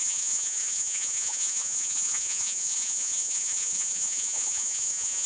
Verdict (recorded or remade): remade